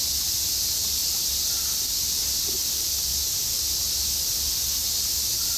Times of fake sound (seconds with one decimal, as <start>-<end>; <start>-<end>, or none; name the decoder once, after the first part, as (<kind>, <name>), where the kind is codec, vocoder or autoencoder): 0.0-2.6 (vocoder, BigVGAN v2)